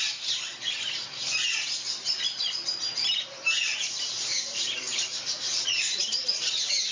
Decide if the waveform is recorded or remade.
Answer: remade